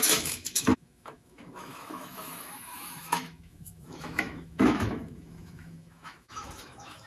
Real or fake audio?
fake